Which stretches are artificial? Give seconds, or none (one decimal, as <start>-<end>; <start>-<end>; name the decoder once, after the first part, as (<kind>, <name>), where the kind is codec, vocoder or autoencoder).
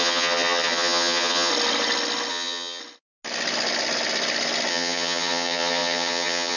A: 0.0-1.5 (vocoder, HiFi-GAN); 2.3-2.8; 4.7-6.6